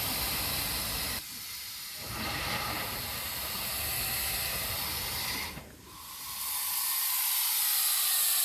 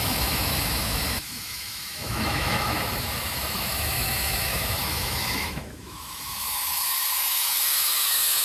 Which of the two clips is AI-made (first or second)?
second